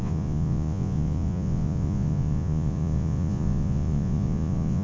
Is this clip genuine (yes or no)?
no